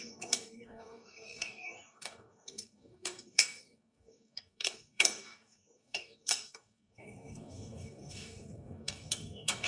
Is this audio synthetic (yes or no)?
yes